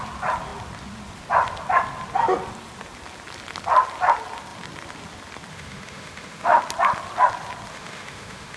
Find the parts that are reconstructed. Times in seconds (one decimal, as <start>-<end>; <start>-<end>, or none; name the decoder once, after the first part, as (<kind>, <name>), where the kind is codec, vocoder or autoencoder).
5.5-6.6 (autoencoder, DAC-VAE); 7.7-8.6